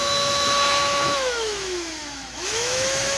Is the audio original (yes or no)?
no